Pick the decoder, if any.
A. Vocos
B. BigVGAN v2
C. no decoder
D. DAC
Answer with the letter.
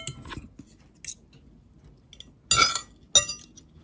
C